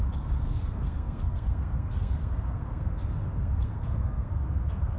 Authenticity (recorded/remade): remade